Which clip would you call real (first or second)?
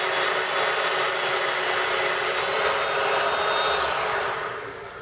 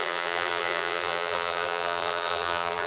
first